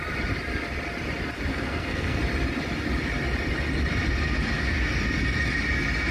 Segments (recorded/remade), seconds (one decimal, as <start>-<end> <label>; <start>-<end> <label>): 0.0-1.5 recorded; 1.5-2.2 remade; 2.2-6.1 recorded